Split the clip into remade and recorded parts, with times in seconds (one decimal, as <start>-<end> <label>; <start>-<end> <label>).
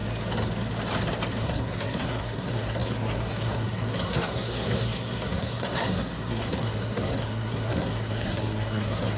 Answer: 0.0-1.4 recorded; 1.4-9.2 remade